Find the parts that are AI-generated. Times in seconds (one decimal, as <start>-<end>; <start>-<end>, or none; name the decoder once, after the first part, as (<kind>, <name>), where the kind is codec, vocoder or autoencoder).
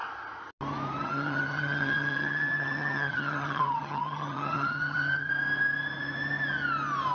1.0-5.3 (vocoder, HiFi-GAN)